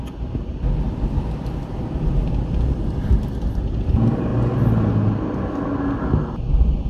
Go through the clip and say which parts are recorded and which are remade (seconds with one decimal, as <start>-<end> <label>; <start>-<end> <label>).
0.0-6.9 recorded